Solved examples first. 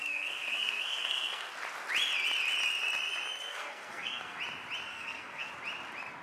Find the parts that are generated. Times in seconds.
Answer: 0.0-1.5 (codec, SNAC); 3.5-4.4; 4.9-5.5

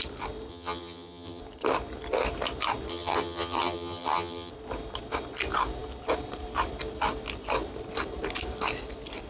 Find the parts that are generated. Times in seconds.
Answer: 0.5-1.4 (vocoder, HiFi-GAN); 2.9-4.5

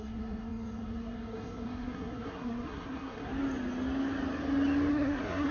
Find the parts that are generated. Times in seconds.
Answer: 0.0-3.3 (codec, SNAC); 4.9-5.5